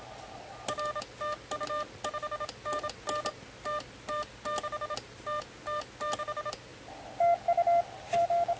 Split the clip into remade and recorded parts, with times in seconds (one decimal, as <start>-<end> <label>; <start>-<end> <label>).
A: 0.0-8.6 recorded